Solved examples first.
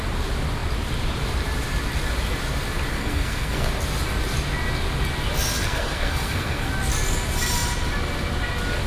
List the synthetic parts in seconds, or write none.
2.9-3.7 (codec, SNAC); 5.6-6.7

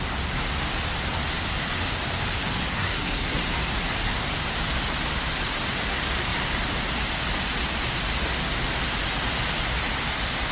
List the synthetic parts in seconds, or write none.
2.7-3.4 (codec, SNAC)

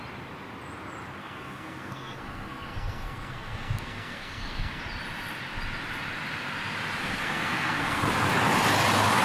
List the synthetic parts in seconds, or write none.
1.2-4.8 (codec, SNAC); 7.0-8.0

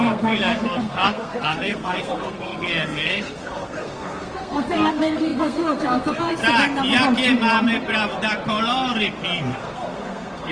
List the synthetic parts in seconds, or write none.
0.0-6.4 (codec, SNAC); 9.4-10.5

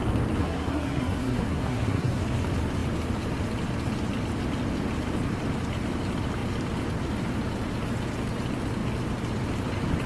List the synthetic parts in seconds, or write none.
0.4-2.2 (codec, SNAC)

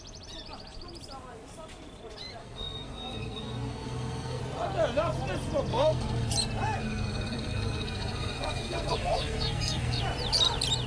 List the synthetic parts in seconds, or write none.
2.4-4.4 (codec, SNAC); 5.7-6.3; 6.8-10.0